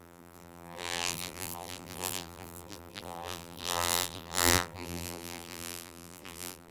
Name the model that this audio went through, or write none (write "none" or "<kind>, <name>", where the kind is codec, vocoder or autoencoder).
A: vocoder, BigVGAN v2